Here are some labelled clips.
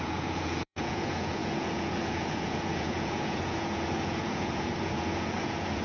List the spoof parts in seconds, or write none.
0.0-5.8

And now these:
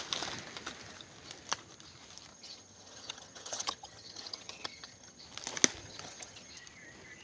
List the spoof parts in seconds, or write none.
2.3-5.2; 5.8-6.5

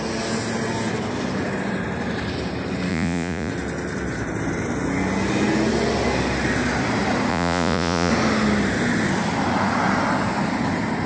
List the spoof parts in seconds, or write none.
2.9-3.5; 7.3-8.1

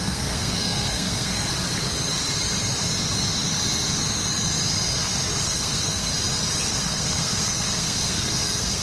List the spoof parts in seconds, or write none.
0.0-1.5; 5.4-6.1; 6.7-8.8

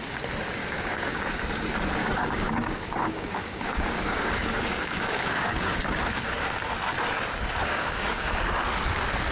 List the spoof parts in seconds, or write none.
0.6-1.2; 2.0-5.8; 7.6-8.5

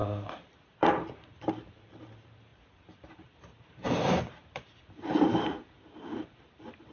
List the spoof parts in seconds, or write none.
0.0-6.9

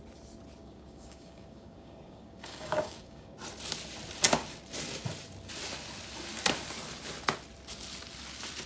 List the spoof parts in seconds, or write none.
0.6-3.4